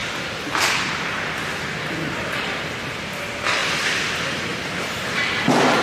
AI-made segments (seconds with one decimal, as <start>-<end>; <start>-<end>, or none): none